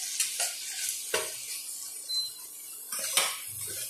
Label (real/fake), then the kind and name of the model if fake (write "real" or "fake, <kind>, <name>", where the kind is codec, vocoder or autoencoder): real